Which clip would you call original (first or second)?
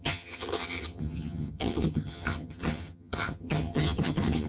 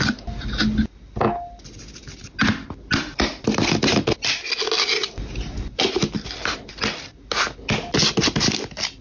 second